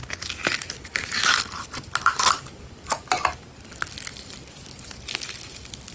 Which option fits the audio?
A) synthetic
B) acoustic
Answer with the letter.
B